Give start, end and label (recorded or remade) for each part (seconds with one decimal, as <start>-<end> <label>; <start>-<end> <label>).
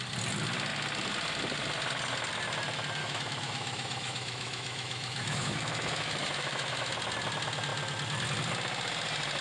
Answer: 0.0-3.0 recorded; 3.0-6.9 remade; 6.9-9.4 recorded